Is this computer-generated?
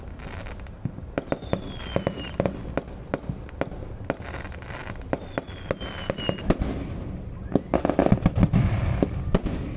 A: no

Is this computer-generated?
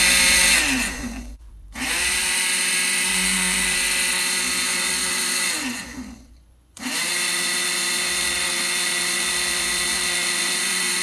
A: yes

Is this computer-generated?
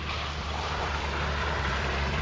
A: yes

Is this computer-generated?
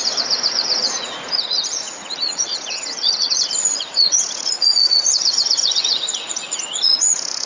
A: yes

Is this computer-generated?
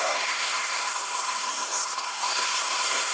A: yes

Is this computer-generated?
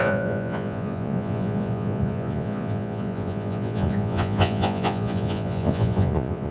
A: yes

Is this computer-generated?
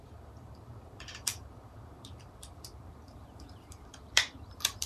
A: yes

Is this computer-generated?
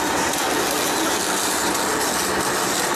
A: no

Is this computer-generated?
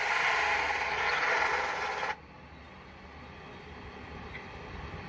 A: no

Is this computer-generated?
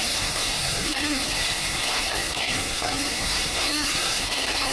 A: yes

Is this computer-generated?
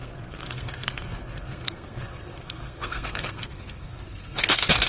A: yes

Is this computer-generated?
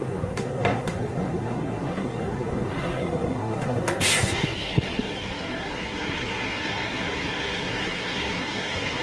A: yes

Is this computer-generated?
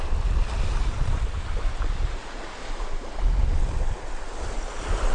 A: no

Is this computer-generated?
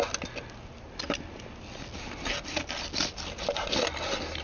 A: no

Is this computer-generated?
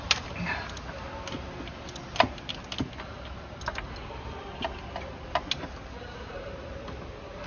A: no